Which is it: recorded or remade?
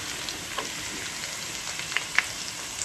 recorded